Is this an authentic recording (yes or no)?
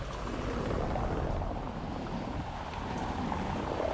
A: yes